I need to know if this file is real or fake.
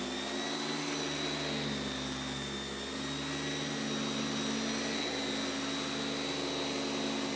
real